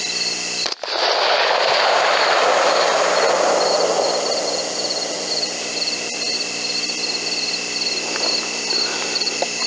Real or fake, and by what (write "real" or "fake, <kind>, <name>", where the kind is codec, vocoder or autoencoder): real